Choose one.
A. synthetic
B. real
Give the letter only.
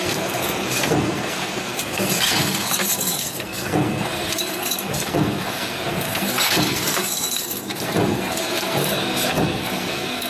A